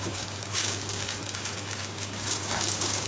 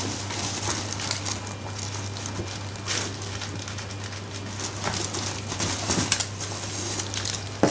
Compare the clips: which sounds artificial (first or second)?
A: first